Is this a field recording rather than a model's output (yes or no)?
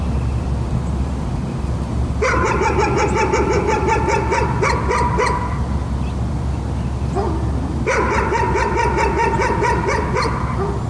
yes